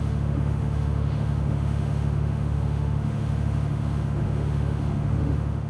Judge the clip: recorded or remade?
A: remade